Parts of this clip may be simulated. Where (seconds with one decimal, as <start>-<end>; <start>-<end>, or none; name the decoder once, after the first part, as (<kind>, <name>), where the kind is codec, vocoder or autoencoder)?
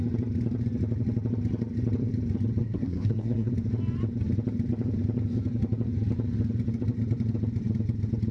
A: 2.6-3.5 (codec, SNAC)